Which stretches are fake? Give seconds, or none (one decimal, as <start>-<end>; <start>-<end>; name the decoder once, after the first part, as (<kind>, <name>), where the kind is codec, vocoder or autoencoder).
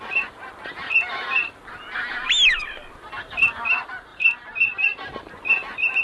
0.8-1.5 (vocoder, BigVGAN v2); 4.1-5.2